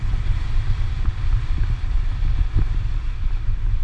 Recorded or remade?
remade